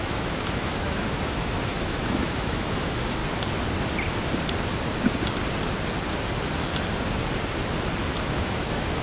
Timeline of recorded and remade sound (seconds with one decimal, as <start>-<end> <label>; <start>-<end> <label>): 0.0-3.2 remade; 3.2-8.0 recorded; 8.0-9.0 remade